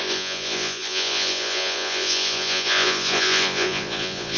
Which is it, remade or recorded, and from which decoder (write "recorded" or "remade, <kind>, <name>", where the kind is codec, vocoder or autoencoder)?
remade, vocoder, Vocos